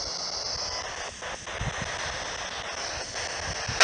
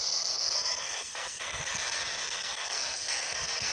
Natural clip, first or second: first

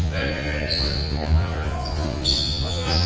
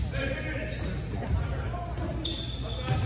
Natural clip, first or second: second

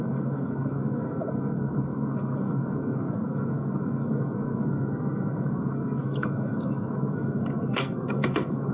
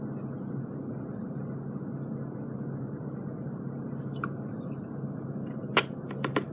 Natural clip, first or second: second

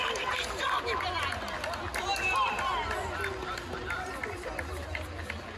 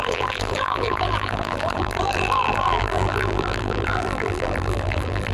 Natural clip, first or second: first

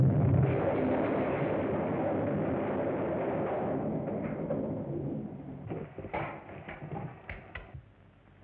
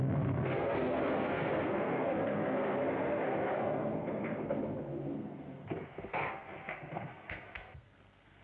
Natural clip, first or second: first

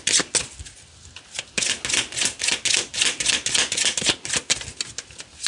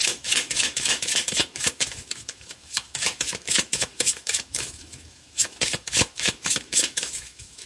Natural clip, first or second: first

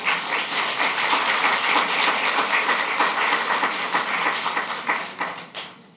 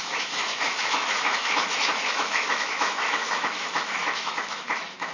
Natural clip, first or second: first